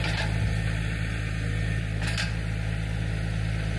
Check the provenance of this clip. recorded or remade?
recorded